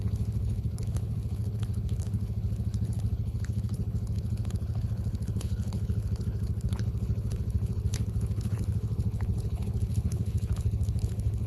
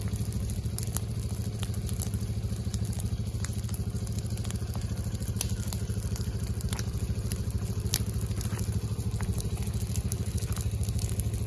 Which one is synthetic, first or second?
first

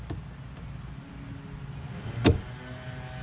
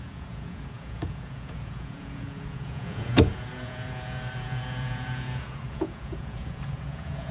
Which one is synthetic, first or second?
second